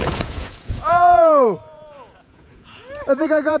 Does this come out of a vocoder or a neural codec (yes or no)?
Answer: yes